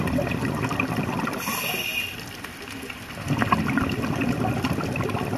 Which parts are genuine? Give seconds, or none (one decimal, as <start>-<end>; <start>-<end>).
0.0-5.4